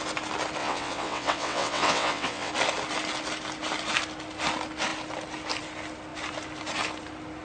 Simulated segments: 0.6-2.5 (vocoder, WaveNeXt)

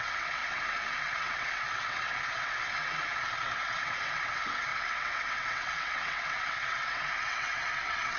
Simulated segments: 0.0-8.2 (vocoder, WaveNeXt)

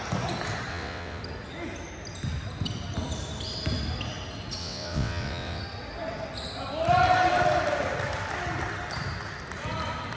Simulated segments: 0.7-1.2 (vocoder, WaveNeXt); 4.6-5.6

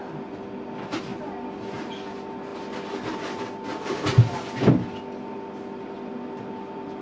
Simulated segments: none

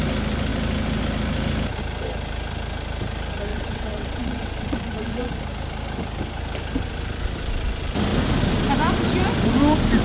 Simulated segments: 3.5-5.3 (vocoder, WaveNeXt)

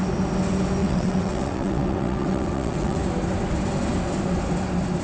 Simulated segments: 0.8-3.0 (vocoder, WaveNeXt)